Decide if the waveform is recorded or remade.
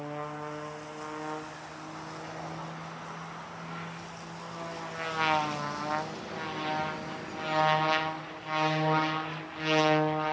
recorded